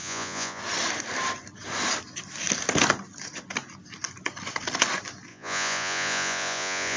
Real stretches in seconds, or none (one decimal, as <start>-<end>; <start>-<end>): 0.6-5.3